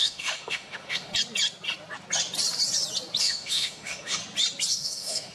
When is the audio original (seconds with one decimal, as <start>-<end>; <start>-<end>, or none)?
1.1-3.2; 4.2-4.7